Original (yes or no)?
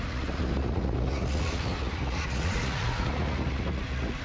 no